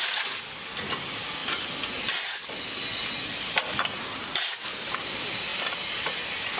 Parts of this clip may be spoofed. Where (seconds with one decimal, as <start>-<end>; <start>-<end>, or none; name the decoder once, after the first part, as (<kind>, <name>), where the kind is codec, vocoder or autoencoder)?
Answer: none